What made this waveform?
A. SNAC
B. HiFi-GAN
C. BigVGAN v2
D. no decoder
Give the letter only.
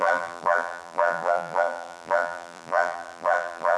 C